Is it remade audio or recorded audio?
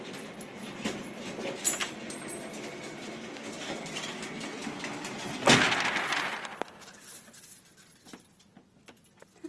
recorded